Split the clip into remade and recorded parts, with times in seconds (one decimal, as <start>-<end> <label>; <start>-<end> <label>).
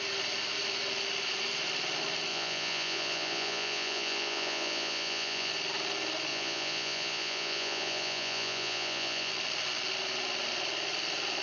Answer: 0.0-2.3 recorded; 2.3-5.5 remade; 5.5-6.3 recorded; 6.3-9.3 remade; 9.3-11.4 recorded